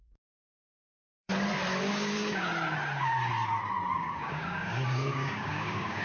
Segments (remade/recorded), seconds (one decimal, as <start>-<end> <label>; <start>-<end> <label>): 0.0-1.3 remade; 1.3-1.9 recorded; 1.9-2.5 remade; 2.5-4.0 recorded; 4.0-6.0 remade